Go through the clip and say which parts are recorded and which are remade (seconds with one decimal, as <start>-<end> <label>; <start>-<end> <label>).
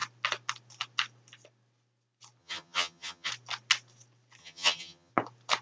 0.0-2.4 recorded; 2.4-3.3 remade; 3.3-4.4 recorded; 4.4-5.1 remade; 5.1-5.6 recorded